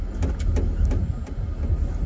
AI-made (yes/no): no